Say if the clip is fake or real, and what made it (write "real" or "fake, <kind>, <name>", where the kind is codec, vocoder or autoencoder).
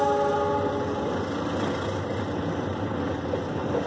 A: real